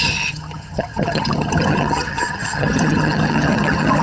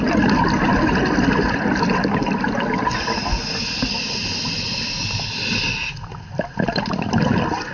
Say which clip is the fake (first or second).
first